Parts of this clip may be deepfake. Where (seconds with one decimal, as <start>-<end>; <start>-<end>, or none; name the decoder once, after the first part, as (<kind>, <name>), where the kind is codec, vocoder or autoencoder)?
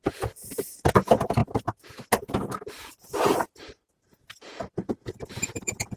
0.0-1.4 (vocoder, Vocos); 3.9-6.0